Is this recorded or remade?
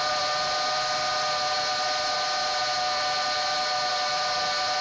recorded